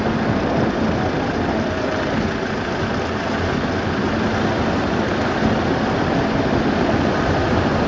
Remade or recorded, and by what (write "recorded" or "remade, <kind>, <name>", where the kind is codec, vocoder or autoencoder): recorded